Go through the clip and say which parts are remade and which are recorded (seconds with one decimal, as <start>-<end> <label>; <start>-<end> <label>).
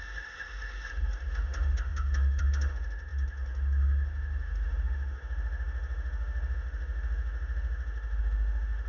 0.0-8.9 remade